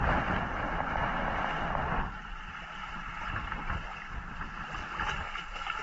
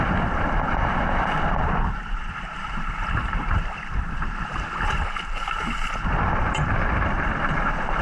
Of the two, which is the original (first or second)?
first